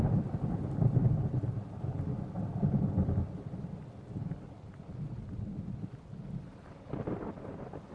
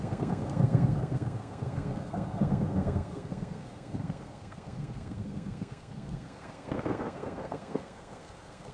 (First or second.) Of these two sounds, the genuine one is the first